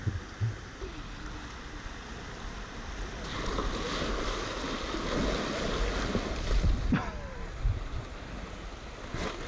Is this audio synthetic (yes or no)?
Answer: no